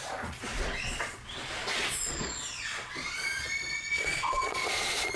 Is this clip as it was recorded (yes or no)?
no